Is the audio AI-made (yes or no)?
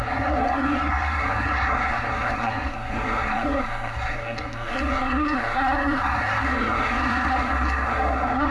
yes